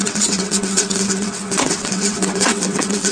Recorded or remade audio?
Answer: remade